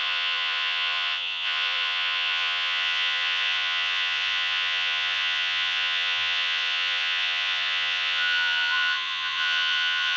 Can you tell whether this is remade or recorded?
remade